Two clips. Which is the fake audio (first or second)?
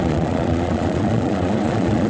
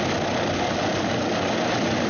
first